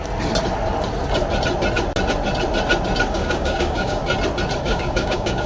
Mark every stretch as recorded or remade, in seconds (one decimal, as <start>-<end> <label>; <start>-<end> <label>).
0.0-3.1 recorded; 3.1-4.0 remade; 4.0-4.6 recorded; 4.6-5.5 remade